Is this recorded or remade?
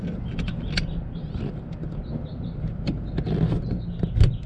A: recorded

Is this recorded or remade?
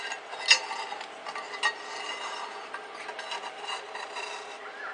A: recorded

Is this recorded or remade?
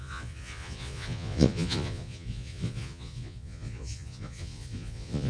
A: remade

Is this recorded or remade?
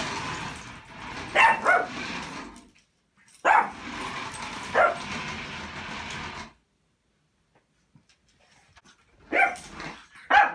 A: recorded